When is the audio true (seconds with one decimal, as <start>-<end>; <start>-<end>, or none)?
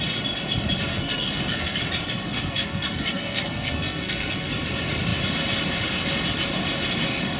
0.0-0.9; 1.8-2.3; 4.5-7.4